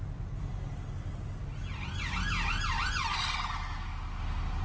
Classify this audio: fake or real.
real